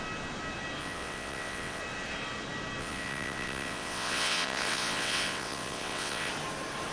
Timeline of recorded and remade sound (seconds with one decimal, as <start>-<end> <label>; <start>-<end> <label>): 0.0-0.8 recorded; 0.8-1.8 remade; 1.8-2.8 recorded; 2.8-6.3 remade; 6.3-6.9 recorded